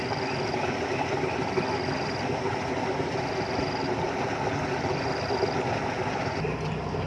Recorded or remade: recorded